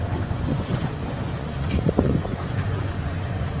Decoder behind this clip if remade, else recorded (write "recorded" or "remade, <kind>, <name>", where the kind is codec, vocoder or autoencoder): remade, vocoder, Vocos